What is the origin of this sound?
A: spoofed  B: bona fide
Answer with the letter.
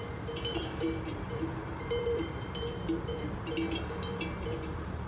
A